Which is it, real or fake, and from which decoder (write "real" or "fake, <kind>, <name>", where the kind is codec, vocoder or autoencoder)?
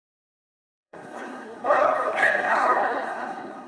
fake, codec, SNAC